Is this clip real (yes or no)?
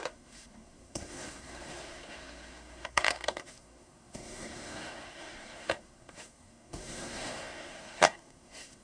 no